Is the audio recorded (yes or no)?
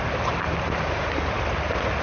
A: yes